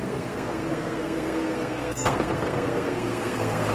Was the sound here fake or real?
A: fake